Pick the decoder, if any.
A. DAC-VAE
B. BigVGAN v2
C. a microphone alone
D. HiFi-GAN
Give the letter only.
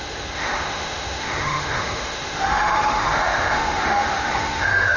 A